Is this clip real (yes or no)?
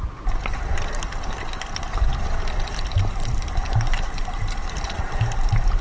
yes